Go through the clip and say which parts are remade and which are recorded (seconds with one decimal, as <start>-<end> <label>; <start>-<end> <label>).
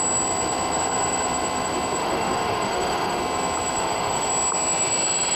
0.0-2.0 recorded; 2.0-3.2 remade; 3.2-3.8 recorded; 3.8-4.3 remade; 4.3-5.4 recorded